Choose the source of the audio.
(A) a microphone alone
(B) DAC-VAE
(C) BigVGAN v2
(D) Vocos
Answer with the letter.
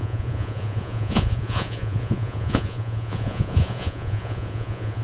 D